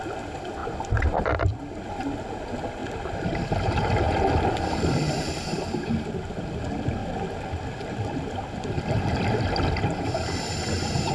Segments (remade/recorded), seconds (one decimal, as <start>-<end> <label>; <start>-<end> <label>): 0.0-0.6 recorded; 0.6-1.8 remade; 1.8-2.8 recorded; 2.8-6.5 remade; 6.5-7.0 recorded; 7.0-11.1 remade